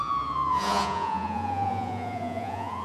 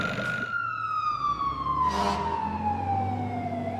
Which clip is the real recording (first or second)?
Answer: second